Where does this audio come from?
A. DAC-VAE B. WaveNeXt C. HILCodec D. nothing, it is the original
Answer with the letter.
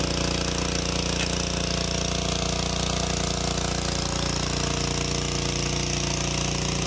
D